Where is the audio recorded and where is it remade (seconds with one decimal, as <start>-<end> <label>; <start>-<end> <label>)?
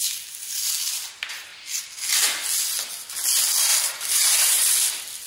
0.0-3.7 recorded; 3.7-4.7 remade; 4.7-5.3 recorded